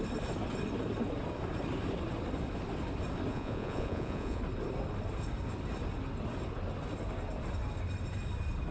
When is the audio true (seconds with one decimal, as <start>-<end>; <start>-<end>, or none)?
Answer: 0.0-3.3; 4.4-8.7